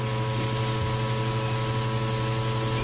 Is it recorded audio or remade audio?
recorded